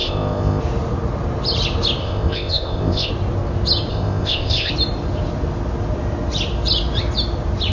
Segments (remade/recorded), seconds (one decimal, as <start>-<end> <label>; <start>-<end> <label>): 0.0-0.6 remade; 0.6-2.0 recorded; 2.0-3.1 remade; 3.1-3.9 recorded; 3.9-4.7 remade; 4.7-7.7 recorded